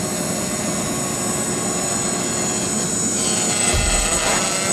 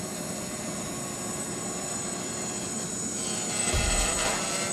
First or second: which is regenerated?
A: second